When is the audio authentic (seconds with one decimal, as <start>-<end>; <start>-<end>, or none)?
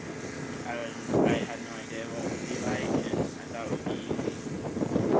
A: 0.0-5.2